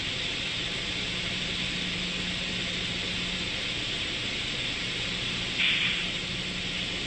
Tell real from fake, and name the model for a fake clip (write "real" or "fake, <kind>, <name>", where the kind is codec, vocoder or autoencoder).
real